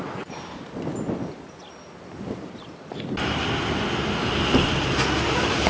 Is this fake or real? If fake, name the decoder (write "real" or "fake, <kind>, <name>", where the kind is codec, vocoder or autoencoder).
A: real